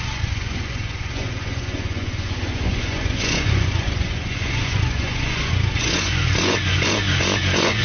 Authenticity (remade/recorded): remade